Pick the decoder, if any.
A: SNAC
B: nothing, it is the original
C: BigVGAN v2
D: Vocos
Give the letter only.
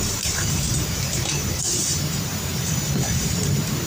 C